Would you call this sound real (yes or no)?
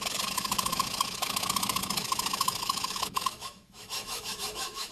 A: no